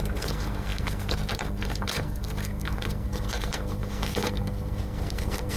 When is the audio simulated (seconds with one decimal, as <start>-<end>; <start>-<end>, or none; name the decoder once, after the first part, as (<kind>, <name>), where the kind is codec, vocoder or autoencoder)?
0.0-5.6 (codec, SNAC)